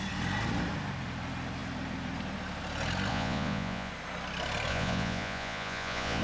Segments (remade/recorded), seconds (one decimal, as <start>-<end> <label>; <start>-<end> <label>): 0.0-3.1 recorded; 3.1-3.9 remade; 3.9-4.7 recorded; 4.7-6.2 remade